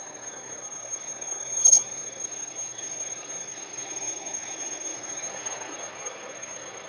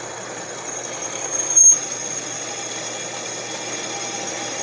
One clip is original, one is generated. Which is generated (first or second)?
first